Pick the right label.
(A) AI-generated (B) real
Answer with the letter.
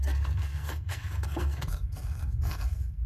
A